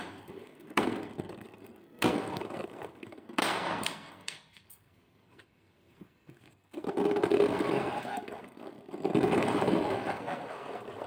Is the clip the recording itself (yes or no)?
no